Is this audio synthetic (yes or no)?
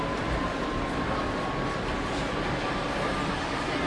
no